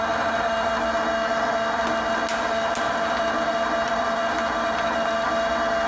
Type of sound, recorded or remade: recorded